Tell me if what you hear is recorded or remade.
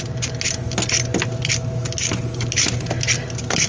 recorded